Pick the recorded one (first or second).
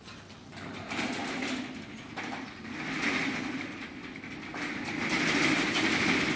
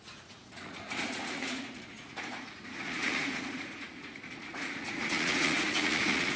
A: first